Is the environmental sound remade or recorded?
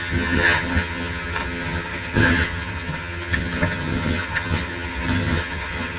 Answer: remade